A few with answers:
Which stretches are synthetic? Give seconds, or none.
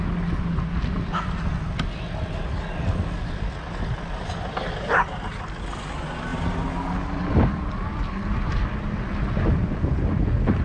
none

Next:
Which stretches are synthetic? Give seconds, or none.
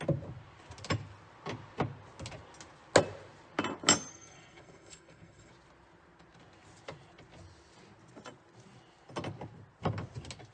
4.1-5.5 (codec, SNAC)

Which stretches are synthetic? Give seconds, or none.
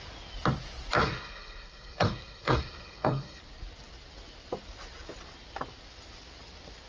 1.0-3.4 (codec, SNAC)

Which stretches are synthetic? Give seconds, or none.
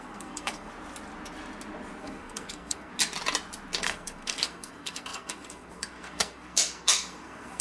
0.0-0.7 (codec, SNAC); 2.0-2.9; 3.8-7.6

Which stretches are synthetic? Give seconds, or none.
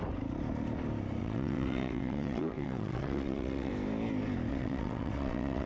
1.2-3.7 (vocoder, WaveNeXt); 4.5-5.7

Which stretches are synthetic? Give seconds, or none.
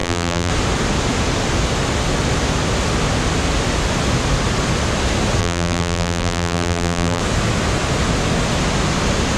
0.0-0.5 (vocoder, BigVGAN v2); 5.4-7.2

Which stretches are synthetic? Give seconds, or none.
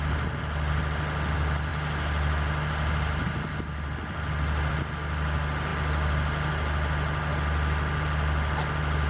none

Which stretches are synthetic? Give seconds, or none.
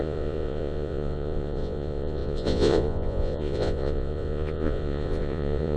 0.0-5.8 (vocoder, Vocos)